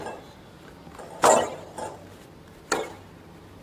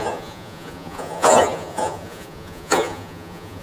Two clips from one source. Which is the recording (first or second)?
first